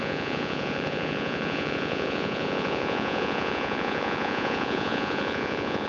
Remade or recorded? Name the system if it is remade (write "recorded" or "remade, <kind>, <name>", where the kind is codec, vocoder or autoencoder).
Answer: remade, vocoder, Vocos